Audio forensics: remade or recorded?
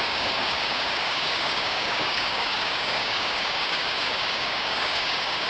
remade